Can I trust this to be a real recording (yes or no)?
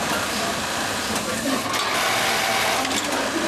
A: yes